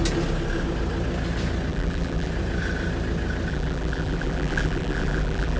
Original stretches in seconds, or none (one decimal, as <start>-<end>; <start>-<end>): 0.0-1.7; 2.3-3.5